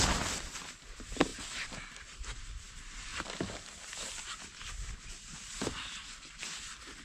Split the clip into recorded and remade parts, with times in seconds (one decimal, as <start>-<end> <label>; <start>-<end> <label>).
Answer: 0.0-7.0 recorded